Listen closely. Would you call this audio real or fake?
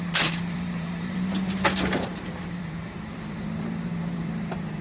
fake